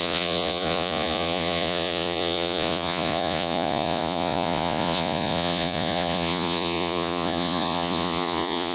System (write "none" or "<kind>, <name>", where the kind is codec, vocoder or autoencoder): vocoder, Vocos